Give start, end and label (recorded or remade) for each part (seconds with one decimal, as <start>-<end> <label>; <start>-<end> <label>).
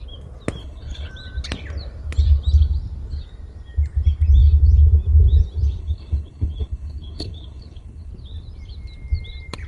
0.0-0.6 recorded; 0.6-1.1 remade; 1.1-5.8 recorded; 5.8-8.1 remade; 8.1-9.7 recorded